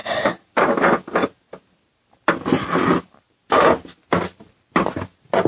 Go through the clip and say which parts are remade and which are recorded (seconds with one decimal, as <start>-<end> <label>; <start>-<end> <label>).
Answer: 0.0-5.5 recorded